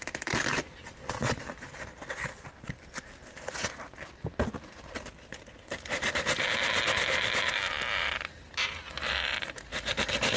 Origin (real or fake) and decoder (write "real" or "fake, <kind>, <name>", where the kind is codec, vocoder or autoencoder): real